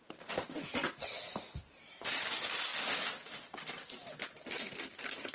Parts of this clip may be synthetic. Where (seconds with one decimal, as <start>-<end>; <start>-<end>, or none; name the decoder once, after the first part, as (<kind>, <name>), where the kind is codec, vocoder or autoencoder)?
0.0-0.8 (vocoder, BigVGAN v2); 1.3-2.7